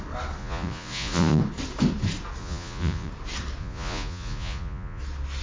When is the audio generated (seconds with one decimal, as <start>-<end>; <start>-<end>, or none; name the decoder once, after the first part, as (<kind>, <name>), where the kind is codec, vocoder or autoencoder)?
0.4-1.4 (vocoder, Vocos); 2.4-3.1; 3.6-5.0